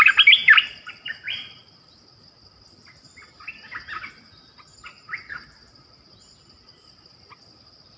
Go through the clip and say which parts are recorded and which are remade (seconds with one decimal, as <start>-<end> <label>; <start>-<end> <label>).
0.0-0.4 recorded; 0.4-1.1 remade; 1.1-8.0 recorded